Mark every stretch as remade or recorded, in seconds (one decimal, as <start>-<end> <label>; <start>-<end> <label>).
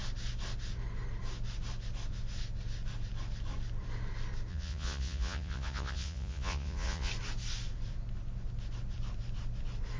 0.0-4.5 recorded; 4.5-7.1 remade; 7.1-10.0 recorded